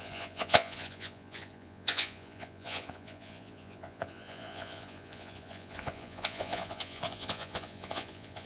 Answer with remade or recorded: remade